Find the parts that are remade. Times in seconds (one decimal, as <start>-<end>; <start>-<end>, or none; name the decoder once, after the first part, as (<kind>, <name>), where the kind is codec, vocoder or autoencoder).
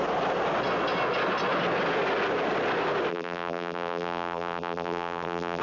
3.1-5.6 (vocoder, BigVGAN v2)